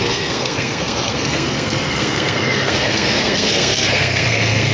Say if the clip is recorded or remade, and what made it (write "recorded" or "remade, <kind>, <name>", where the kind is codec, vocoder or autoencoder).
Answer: remade, codec, SNAC